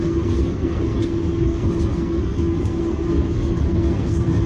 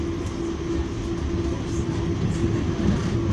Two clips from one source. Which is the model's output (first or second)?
first